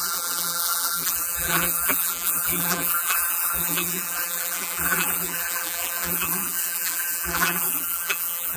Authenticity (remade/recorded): remade